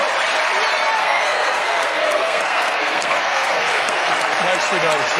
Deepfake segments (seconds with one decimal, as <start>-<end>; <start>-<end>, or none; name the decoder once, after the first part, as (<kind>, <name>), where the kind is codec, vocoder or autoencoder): 1.0-4.1 (codec, SNAC)